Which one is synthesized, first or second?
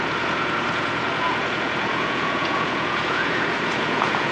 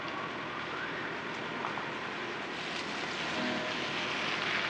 first